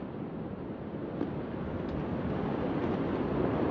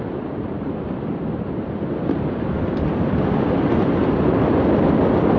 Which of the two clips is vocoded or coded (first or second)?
second